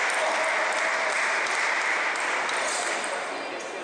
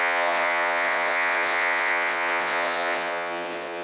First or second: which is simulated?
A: second